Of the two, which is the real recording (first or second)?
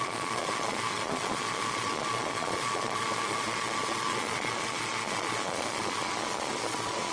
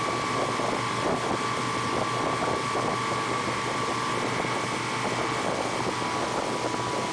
second